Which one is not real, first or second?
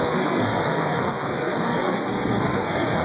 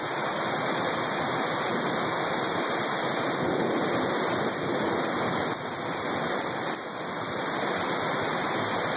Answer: first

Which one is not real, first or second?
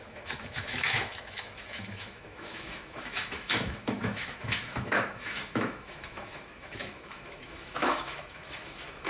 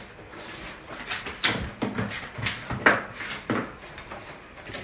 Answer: first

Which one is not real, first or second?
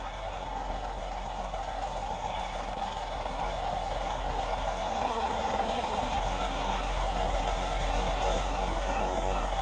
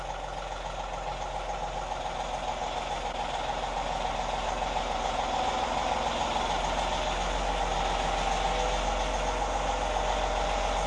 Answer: first